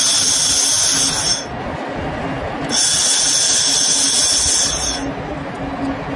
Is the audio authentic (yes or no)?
yes